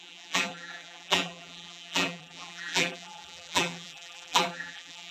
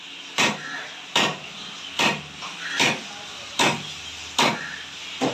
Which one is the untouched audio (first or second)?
second